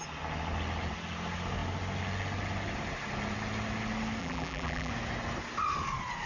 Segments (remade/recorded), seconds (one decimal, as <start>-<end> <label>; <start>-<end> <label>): 0.0-4.2 recorded; 4.2-4.9 remade; 4.9-6.3 recorded